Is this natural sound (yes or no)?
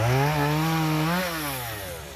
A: yes